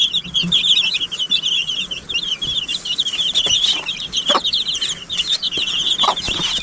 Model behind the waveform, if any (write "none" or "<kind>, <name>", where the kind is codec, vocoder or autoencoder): vocoder, BigVGAN v2